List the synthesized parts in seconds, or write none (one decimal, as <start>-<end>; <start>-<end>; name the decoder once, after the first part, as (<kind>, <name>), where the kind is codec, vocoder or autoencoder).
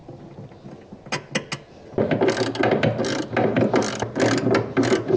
none